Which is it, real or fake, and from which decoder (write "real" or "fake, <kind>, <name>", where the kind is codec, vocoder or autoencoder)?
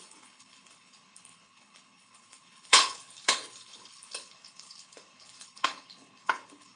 fake, codec, HILCodec